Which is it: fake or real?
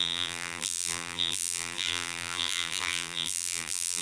fake